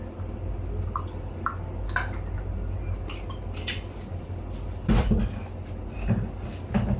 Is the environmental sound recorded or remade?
recorded